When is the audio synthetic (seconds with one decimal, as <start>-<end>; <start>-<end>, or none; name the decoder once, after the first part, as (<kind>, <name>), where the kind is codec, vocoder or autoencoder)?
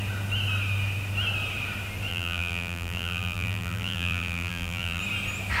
2.1-5.0 (vocoder, BigVGAN v2)